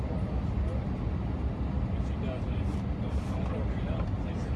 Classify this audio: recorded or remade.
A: recorded